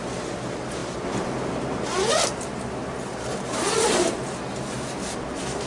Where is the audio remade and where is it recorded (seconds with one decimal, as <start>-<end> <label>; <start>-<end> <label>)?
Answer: 0.0-5.7 recorded